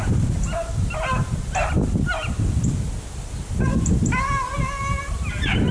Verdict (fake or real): real